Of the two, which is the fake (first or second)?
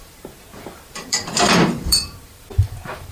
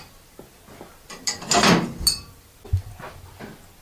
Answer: first